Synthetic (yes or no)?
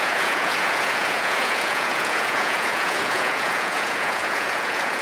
yes